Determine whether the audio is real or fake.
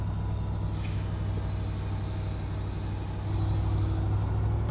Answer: real